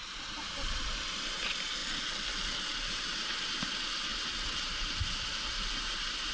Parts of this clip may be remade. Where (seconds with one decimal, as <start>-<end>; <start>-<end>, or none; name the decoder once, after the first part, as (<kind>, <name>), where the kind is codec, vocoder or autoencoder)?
0.0-1.8 (vocoder, BigVGAN v2); 2.6-6.3